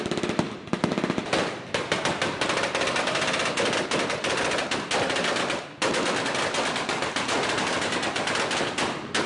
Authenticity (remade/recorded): recorded